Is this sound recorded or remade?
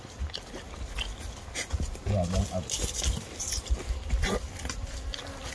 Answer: recorded